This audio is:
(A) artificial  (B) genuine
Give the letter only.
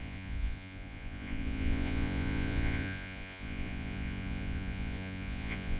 A